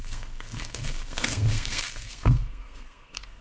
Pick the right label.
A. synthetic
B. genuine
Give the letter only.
A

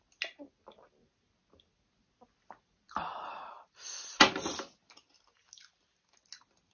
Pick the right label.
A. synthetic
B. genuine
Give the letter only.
B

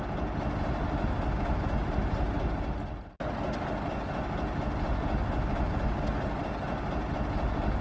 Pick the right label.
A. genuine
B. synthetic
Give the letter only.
A